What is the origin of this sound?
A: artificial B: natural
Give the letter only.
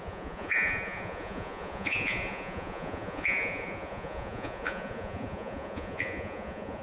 A